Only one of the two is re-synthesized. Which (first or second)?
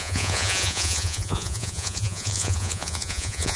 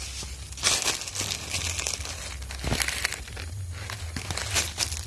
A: first